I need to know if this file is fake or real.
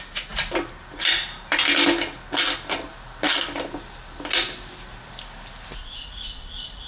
real